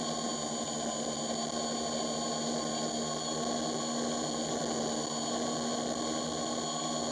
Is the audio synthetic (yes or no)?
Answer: no